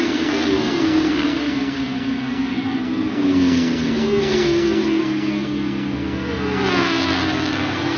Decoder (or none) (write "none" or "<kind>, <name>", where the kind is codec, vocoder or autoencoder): codec, SNAC